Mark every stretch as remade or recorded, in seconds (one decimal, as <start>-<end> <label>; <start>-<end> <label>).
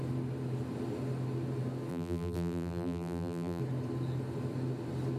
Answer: 0.0-1.9 recorded; 1.9-3.6 remade; 3.6-5.2 recorded